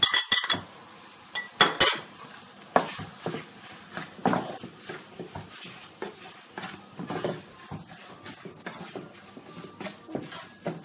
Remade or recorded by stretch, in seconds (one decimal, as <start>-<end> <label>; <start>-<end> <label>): 0.0-10.8 recorded